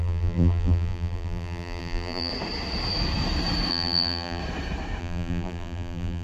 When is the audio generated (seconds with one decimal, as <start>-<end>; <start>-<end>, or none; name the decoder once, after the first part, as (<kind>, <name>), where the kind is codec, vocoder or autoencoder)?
0.0-2.3 (vocoder, BigVGAN v2); 3.7-4.4; 5.0-6.2